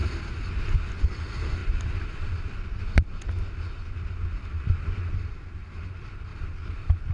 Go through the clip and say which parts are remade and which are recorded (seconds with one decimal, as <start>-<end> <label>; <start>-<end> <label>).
0.0-6.3 recorded; 6.3-7.1 remade